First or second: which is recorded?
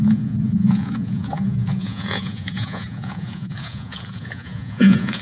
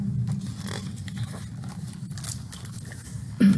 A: second